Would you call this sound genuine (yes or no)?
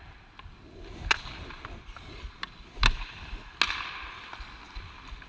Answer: yes